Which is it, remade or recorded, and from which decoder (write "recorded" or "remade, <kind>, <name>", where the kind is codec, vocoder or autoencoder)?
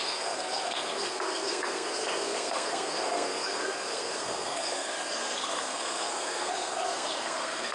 remade, codec, SNAC